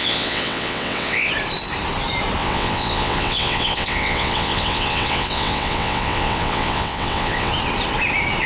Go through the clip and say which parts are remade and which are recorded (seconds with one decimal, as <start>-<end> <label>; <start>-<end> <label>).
0.0-1.3 remade; 1.3-2.4 recorded; 2.4-7.5 remade; 7.5-8.5 recorded